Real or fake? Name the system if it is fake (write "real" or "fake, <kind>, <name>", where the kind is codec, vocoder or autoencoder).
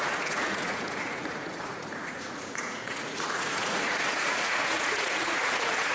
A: fake, vocoder, Vocos